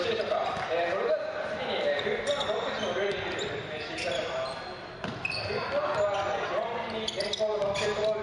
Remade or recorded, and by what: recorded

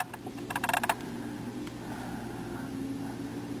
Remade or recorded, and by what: recorded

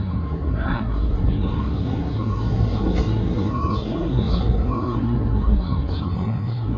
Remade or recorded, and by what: remade, codec, SNAC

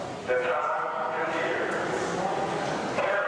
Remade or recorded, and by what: recorded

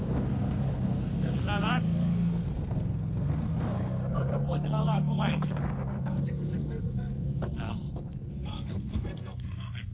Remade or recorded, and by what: remade, codec, SNAC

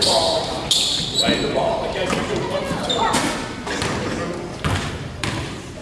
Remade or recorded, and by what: remade, vocoder, BigVGAN v2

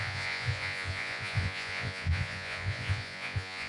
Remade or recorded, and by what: remade, vocoder, Vocos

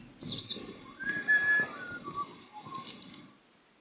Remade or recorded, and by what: recorded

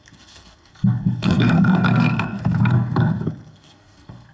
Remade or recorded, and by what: remade, codec, SNAC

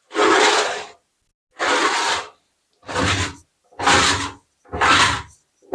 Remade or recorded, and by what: recorded